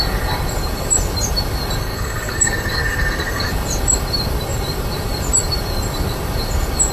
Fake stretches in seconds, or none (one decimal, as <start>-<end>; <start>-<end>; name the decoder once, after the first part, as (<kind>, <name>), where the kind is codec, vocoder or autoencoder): 1.8-3.5 (codec, SNAC)